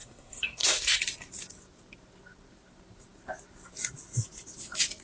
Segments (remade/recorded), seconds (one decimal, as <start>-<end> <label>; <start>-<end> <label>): 0.0-1.0 remade; 1.0-5.0 recorded